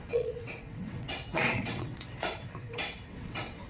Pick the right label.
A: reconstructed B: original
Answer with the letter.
A